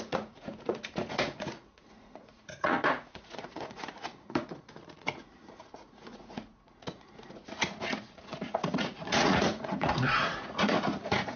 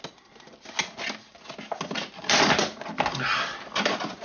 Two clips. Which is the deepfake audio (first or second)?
first